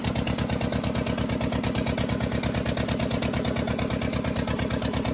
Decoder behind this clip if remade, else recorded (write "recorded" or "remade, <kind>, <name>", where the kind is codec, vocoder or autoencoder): recorded